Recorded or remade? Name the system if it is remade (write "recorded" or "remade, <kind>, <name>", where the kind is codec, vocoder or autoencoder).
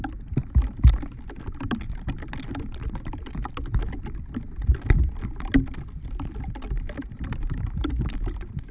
recorded